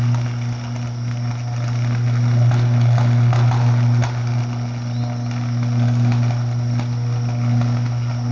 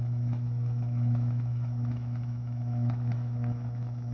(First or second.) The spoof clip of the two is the second